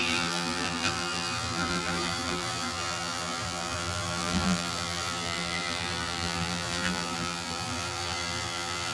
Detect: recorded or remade remade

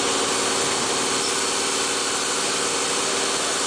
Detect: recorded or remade recorded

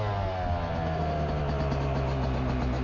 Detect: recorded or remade recorded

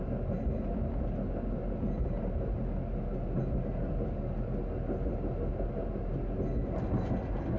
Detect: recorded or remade recorded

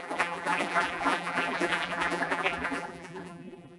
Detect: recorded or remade remade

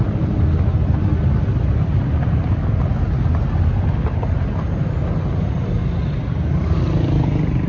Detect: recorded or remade recorded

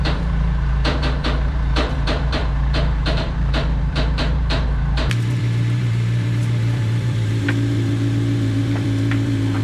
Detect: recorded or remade remade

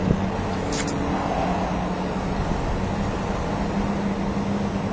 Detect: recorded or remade recorded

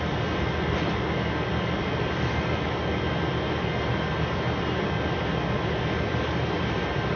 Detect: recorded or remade remade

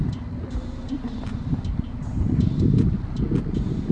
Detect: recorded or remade recorded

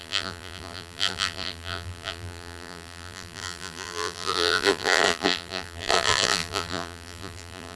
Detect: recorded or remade remade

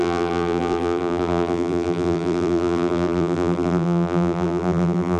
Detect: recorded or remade remade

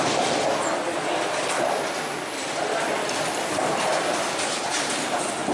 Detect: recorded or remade recorded